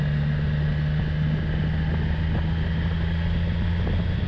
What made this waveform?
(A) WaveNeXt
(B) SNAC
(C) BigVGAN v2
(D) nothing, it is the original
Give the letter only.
D